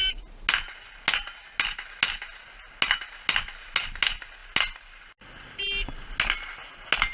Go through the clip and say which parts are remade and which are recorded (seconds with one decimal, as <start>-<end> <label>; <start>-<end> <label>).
0.0-7.1 recorded